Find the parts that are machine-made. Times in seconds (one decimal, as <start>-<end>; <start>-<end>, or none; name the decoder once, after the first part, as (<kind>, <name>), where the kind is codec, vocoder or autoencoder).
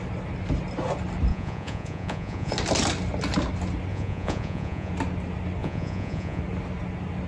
1.3-2.5 (vocoder, Vocos); 3.9-4.9; 5.6-6.4